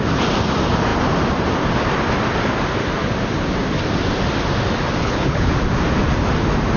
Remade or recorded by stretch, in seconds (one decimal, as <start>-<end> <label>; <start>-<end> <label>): 0.0-5.0 recorded; 5.0-5.5 remade; 5.5-6.8 recorded